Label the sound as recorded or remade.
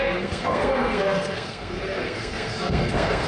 remade